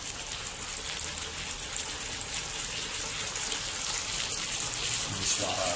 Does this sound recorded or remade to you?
recorded